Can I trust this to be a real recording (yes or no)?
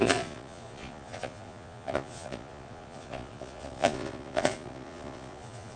no